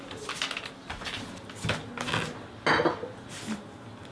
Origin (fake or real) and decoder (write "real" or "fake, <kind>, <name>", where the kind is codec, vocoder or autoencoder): real